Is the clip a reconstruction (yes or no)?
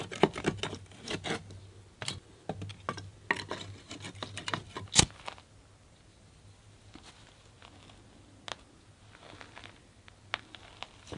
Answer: no